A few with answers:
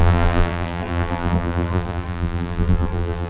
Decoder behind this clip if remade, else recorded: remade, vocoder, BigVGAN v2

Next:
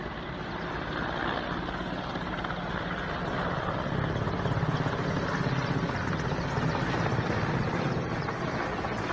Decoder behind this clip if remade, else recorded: recorded